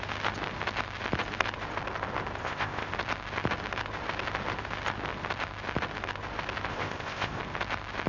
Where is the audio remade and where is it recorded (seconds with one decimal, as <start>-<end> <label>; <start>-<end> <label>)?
0.0-2.4 recorded; 2.4-2.9 remade; 2.9-6.7 recorded; 6.7-7.4 remade; 7.4-8.1 recorded